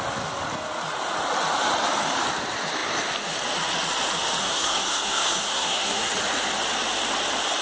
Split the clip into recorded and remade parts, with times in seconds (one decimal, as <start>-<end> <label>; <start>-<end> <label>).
0.0-4.4 recorded; 4.4-6.1 remade; 6.1-7.6 recorded